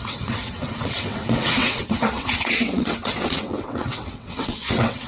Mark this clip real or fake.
fake